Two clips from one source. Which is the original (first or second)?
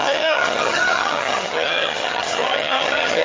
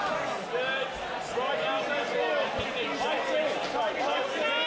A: second